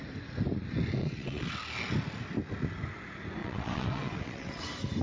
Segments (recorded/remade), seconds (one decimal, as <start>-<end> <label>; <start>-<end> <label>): 0.0-1.0 recorded; 1.0-1.5 remade; 1.5-3.4 recorded; 3.4-4.6 remade; 4.6-5.0 recorded